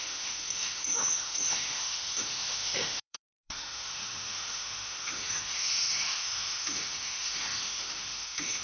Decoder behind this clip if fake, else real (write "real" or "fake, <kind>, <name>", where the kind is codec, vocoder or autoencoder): fake, autoencoder, DAC-VAE